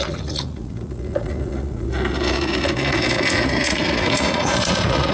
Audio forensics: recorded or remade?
remade